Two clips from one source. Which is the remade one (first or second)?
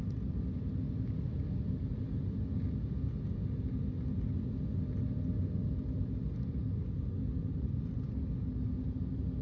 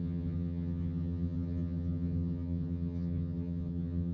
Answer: second